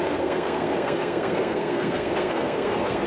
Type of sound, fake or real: fake